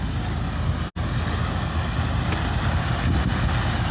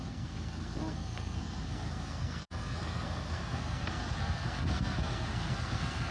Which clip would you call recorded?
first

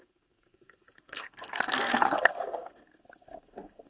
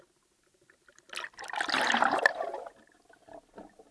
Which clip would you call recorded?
second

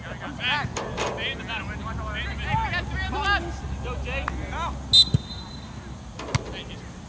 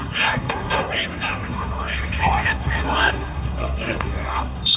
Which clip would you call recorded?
first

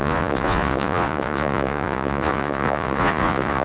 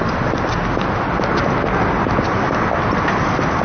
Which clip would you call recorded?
second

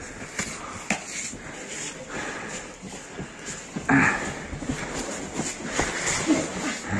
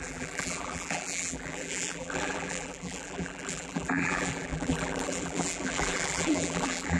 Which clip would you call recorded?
first